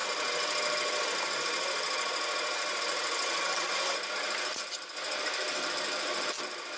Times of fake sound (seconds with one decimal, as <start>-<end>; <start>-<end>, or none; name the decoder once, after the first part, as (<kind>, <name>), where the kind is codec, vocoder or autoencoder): none